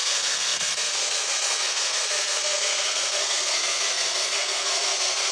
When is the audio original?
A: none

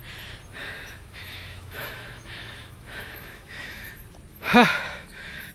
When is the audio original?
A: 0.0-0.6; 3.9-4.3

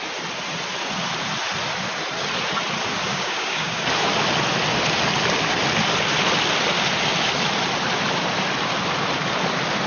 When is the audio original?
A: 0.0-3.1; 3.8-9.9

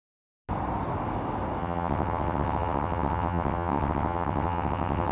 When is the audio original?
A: 0.0-1.6